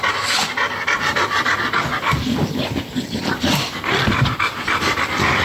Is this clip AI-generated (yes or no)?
no